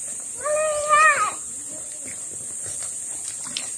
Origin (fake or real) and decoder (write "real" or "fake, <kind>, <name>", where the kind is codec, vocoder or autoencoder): real